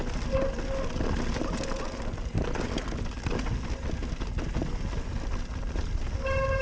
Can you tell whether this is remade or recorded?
recorded